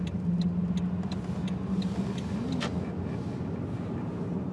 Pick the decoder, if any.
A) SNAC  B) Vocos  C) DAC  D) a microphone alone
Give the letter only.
D